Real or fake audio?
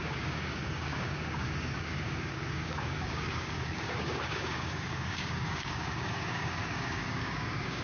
fake